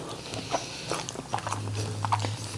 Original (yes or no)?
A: yes